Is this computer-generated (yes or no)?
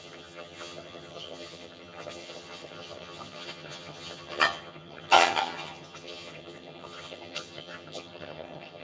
yes